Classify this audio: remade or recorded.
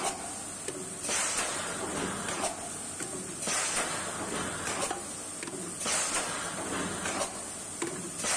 recorded